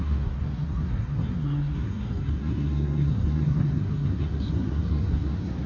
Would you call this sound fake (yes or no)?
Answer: yes